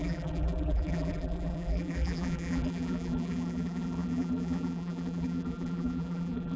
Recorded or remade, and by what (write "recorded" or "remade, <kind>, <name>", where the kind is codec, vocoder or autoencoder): remade, vocoder, BigVGAN v2